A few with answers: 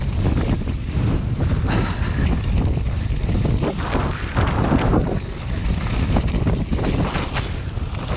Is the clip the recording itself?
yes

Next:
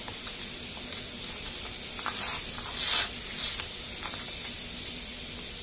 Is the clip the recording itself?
yes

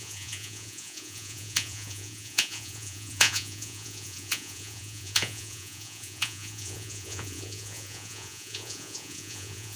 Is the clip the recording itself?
no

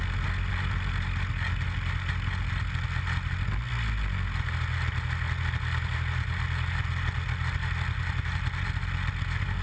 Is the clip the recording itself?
yes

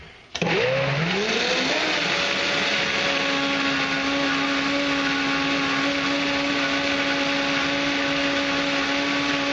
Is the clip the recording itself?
yes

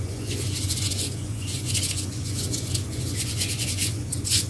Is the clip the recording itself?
no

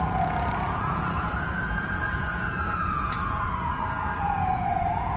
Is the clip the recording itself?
no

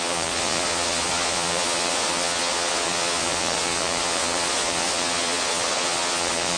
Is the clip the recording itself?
no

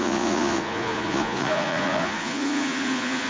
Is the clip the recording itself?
no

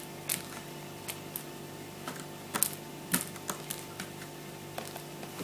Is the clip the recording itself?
yes